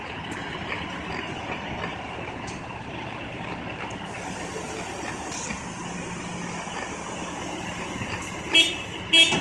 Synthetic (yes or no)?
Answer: no